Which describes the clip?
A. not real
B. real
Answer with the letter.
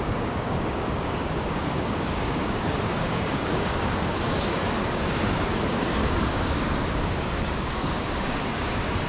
A